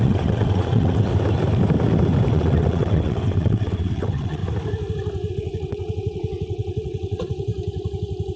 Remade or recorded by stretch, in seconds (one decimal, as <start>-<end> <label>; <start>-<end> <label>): 0.0-1.1 remade; 1.1-2.3 recorded; 2.3-4.4 remade; 4.4-5.3 recorded; 5.3-7.5 remade; 7.5-8.4 recorded